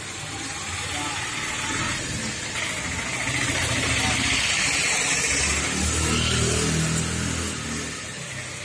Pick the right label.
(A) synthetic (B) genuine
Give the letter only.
B